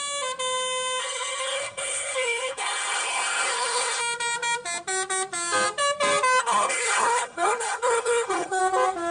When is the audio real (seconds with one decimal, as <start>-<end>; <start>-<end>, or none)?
0.0-1.0; 4.0-6.4; 8.6-9.1